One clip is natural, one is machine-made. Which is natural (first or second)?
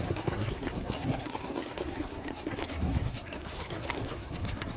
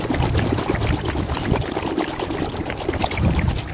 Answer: second